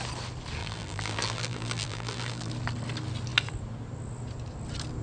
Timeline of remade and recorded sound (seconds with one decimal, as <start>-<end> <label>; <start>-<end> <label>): 0.0-0.6 recorded; 0.6-2.5 remade; 2.5-5.0 recorded